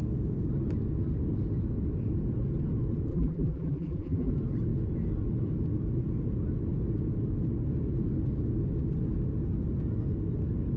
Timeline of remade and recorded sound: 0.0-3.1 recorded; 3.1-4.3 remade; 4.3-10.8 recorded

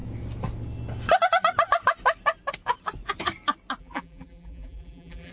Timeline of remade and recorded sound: 0.0-3.8 recorded; 3.8-5.3 remade

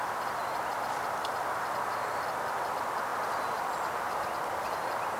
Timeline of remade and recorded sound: 0.0-1.2 recorded; 1.2-2.4 remade; 2.4-5.2 recorded

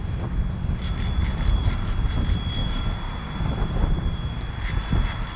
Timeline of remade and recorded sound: 0.0-1.2 recorded; 1.2-2.2 remade; 2.2-2.6 recorded; 2.6-4.4 remade; 4.4-5.4 recorded

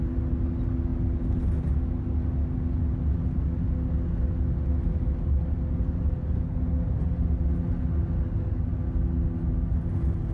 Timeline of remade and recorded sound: 0.0-10.3 recorded

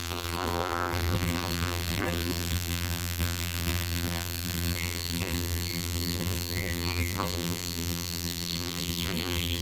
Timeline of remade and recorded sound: 0.0-9.6 remade

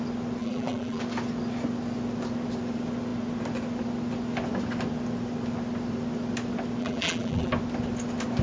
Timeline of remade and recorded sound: 0.0-0.4 recorded; 0.4-1.0 remade; 1.0-6.8 recorded; 6.8-7.5 remade; 7.5-8.4 recorded

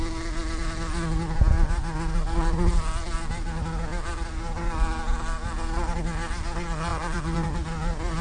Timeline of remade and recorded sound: 0.0-6.9 recorded; 6.9-7.5 remade; 7.5-8.2 recorded